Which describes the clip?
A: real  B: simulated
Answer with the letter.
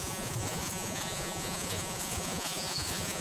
B